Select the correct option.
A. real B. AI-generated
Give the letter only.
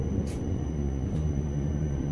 B